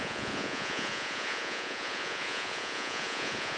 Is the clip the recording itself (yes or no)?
no